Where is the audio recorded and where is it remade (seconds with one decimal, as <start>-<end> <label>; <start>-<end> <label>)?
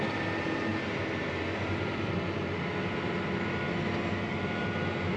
0.0-5.2 recorded